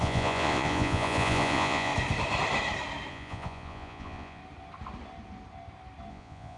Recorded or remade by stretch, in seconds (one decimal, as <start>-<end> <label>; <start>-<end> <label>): 0.0-1.9 remade; 1.9-3.1 recorded; 3.1-4.4 remade; 4.4-6.1 recorded; 6.1-6.6 remade